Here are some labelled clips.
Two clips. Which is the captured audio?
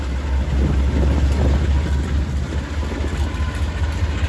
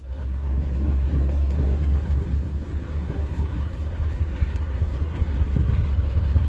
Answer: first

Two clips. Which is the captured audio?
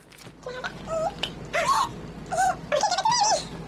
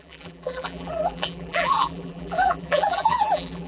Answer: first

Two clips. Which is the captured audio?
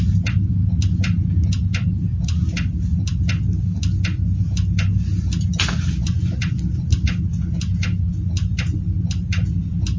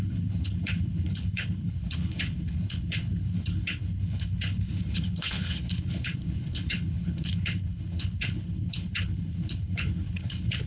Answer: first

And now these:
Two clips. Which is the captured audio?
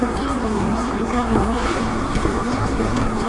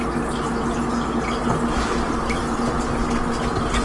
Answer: second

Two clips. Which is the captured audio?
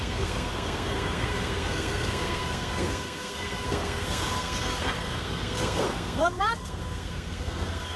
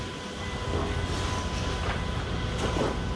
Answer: second